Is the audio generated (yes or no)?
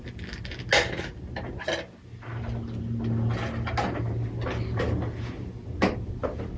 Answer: no